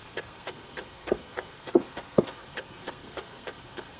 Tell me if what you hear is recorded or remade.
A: remade